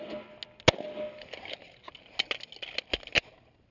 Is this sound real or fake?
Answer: real